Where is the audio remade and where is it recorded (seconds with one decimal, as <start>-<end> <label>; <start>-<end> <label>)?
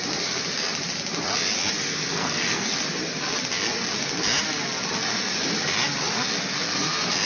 0.0-1.9 recorded; 1.9-2.7 remade; 2.7-7.3 recorded